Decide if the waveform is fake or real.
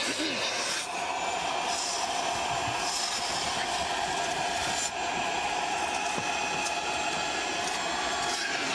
real